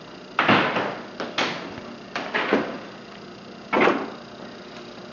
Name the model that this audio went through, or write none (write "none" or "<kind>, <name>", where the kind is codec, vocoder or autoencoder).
none